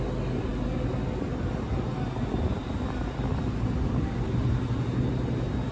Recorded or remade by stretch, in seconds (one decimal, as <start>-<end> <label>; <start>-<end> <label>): 0.0-5.7 recorded